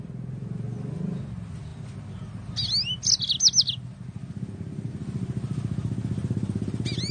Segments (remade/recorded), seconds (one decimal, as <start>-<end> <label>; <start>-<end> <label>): 0.0-7.1 recorded